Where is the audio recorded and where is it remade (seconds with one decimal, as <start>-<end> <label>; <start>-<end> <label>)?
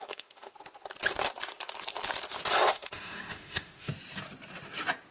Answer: 0.0-0.5 remade; 0.5-2.7 recorded; 2.7-3.9 remade; 3.9-5.1 recorded